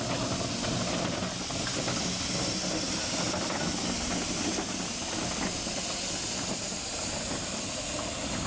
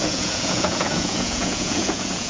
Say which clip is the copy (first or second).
second